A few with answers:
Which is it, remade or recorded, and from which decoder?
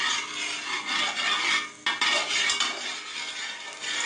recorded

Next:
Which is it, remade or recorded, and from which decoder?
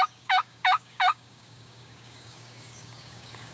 remade, codec, DAC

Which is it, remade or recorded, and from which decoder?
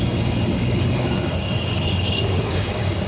remade, codec, DAC